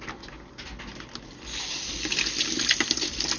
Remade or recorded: recorded